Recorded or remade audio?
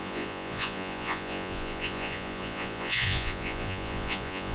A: remade